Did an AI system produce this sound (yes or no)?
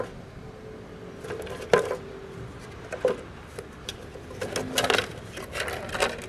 no